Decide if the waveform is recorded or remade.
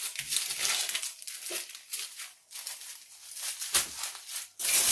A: recorded